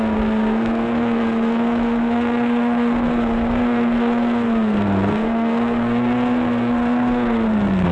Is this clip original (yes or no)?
no